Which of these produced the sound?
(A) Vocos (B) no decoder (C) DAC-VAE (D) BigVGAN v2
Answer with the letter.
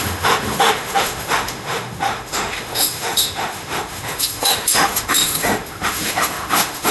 C